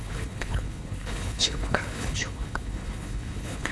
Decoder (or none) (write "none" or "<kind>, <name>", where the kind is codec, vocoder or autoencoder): codec, HILCodec